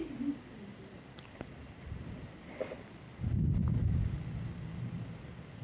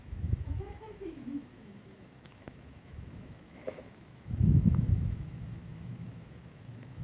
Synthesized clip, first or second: second